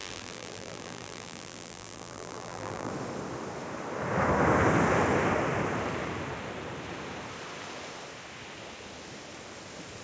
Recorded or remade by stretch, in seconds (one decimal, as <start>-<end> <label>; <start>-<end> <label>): 0.0-2.9 remade; 2.9-10.0 recorded